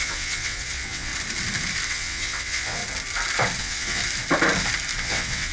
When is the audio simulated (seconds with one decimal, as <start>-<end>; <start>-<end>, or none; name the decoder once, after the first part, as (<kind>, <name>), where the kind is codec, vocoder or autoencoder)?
0.0-1.1 (vocoder, WaveNeXt); 1.9-2.8; 3.6-4.0; 5.0-5.5